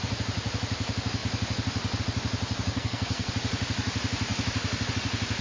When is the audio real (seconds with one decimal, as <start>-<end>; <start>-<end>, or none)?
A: 0.0-2.7; 3.3-5.4